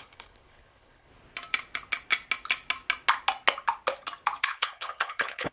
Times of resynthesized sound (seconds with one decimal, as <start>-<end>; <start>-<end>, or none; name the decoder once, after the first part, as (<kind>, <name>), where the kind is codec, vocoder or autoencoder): 0.0-1.1 (codec, HILCodec); 4.4-5.5